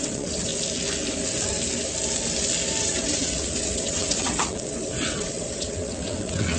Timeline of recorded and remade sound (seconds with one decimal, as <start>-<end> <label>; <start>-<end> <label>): 0.0-0.5 remade; 0.5-2.8 recorded; 2.8-6.6 remade